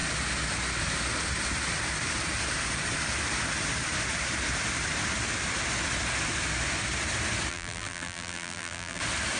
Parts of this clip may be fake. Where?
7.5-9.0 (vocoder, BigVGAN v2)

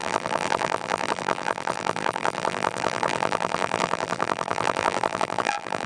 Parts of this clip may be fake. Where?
0.0-5.9 (vocoder, BigVGAN v2)

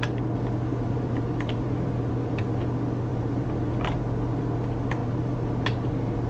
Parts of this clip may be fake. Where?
0.7-2.4 (vocoder, BigVGAN v2); 3.1-4.0; 5.0-6.3